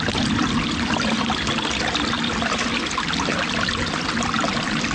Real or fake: real